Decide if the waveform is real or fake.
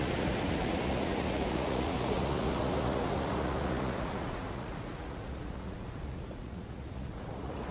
fake